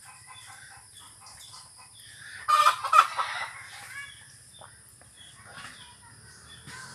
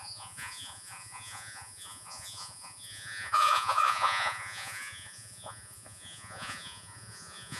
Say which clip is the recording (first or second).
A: first